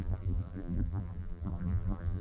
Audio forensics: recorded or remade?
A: remade